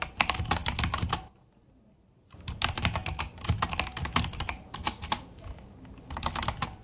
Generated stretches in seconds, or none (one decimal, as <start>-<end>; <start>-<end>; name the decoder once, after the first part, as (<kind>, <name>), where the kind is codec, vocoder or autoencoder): none